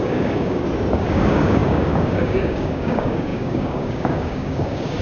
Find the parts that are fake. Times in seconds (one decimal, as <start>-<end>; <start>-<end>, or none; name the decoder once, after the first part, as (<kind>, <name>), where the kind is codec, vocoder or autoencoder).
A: 0.0-0.6 (codec, DAC); 1.1-5.0